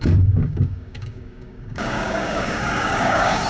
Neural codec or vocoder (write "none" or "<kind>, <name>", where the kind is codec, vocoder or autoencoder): codec, DAC